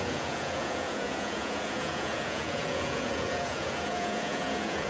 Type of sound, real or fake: fake